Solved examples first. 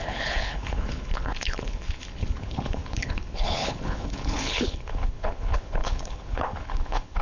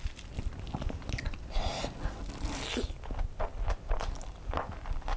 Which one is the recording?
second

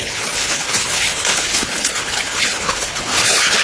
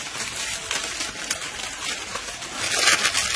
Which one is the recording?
second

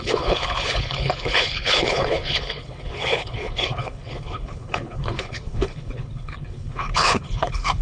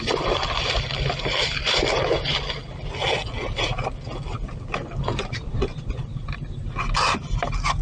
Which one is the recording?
second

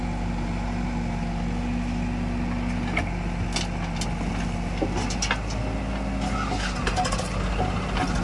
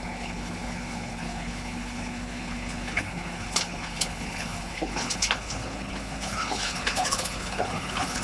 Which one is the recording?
first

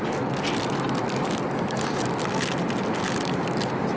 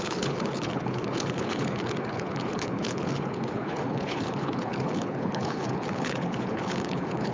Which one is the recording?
first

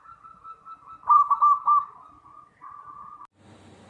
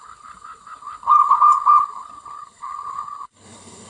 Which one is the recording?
first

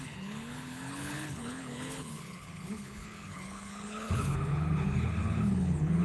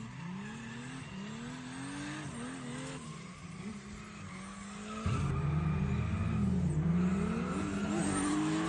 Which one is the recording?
second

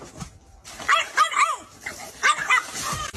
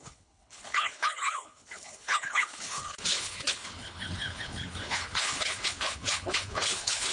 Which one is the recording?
first